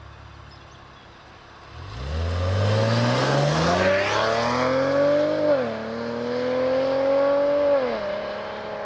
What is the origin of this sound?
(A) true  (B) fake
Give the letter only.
A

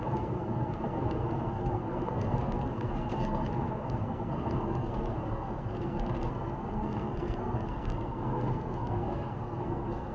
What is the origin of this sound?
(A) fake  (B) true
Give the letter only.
A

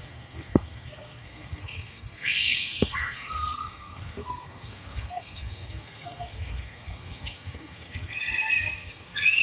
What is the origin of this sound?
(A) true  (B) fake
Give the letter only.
B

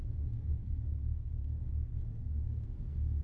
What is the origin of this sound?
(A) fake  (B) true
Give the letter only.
A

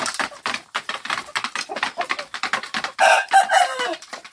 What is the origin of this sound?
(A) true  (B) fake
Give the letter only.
B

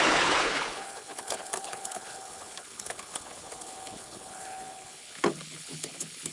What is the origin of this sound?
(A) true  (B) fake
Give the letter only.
B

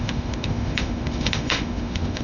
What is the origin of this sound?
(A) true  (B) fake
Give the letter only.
B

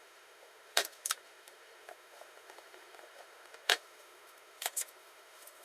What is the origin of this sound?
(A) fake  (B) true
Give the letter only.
A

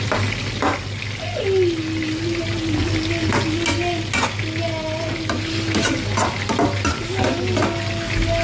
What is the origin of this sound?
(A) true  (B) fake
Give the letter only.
A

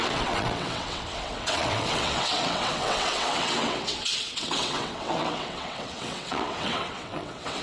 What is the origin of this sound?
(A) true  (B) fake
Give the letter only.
B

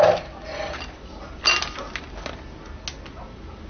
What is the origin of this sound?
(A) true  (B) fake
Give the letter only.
A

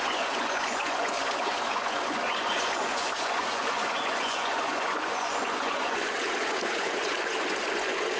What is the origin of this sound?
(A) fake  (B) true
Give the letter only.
A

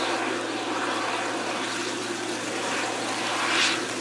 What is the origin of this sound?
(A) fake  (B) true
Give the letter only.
B